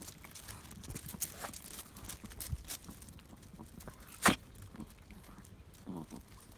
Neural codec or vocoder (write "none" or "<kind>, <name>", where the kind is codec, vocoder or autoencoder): none